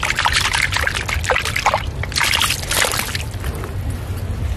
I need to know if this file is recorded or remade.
recorded